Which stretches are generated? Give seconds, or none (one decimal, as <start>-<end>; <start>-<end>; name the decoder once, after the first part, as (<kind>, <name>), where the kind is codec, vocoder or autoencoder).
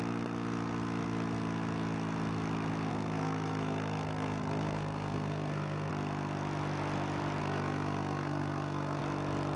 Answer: 2.9-5.9 (codec, SNAC); 7.4-9.0